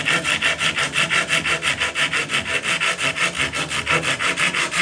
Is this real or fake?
real